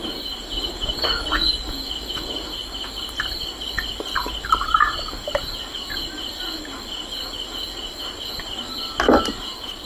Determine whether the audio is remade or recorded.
recorded